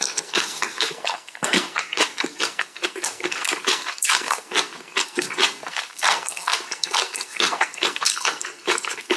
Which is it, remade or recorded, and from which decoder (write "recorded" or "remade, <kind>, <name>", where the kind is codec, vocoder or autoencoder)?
remade, codec, SNAC